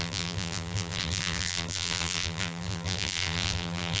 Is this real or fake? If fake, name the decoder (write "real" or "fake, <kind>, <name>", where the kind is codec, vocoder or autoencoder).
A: fake, vocoder, BigVGAN v2